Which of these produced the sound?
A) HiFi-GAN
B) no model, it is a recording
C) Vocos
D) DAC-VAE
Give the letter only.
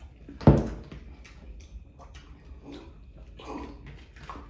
B